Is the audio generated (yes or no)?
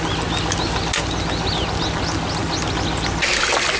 no